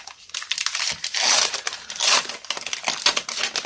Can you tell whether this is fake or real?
real